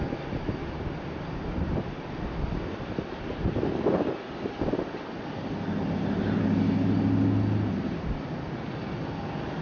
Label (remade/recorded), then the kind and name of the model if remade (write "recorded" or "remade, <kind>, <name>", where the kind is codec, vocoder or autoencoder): recorded